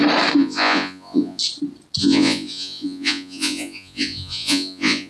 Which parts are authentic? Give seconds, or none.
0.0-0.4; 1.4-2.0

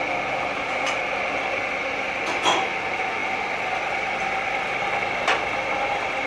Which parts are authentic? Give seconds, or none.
0.0-6.3

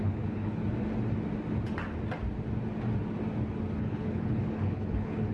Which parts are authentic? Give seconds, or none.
0.6-3.8